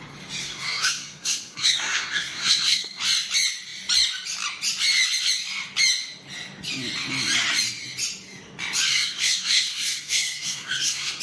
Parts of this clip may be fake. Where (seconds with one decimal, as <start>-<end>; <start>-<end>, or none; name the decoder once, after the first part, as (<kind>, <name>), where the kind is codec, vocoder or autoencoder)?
0.4-3.0 (codec, SNAC); 8.9-11.2